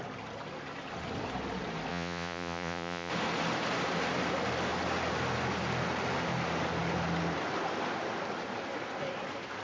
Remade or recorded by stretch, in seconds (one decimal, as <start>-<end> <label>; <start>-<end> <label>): 0.0-1.9 recorded; 1.9-3.1 remade; 3.1-9.6 recorded